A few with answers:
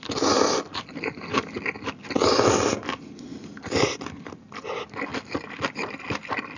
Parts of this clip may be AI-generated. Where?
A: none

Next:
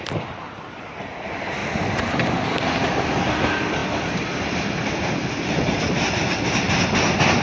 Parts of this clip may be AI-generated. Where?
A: none

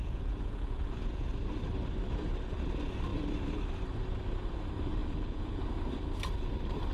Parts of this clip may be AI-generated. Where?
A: 0.0-1.3 (vocoder, Vocos); 5.0-5.6

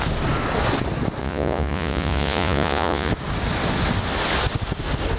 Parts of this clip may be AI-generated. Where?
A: 1.2-3.1 (vocoder, Vocos)

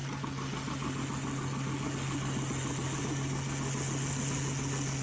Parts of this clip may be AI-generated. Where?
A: none